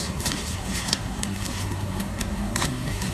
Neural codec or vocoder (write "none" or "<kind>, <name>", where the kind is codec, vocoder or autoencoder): codec, SNAC